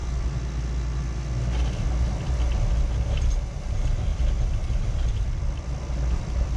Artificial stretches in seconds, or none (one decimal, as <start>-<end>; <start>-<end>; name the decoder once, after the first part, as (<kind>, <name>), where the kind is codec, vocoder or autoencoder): 3.2-6.6 (vocoder, BigVGAN v2)

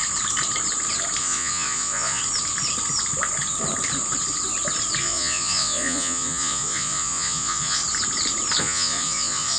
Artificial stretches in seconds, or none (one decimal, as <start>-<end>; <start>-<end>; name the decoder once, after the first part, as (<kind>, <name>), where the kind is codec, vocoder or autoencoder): 1.2-2.2 (vocoder, Vocos); 5.0-7.8; 8.6-9.6